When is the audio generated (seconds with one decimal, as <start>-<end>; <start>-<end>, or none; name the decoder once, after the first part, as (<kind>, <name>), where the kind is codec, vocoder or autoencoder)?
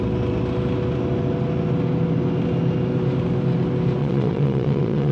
4.0-5.1 (vocoder, WaveNeXt)